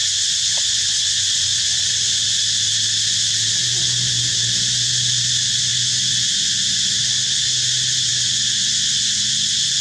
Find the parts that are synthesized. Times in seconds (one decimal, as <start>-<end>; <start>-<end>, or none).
0.0-2.4; 3.6-4.3; 5.7-7.0; 8.1-9.3